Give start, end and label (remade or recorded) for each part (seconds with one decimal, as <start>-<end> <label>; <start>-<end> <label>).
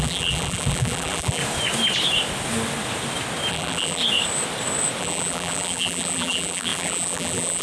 0.0-1.4 remade; 1.4-3.5 recorded; 3.5-4.0 remade; 4.0-5.0 recorded; 5.0-7.6 remade